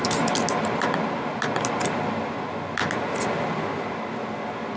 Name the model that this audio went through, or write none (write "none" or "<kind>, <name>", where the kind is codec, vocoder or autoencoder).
none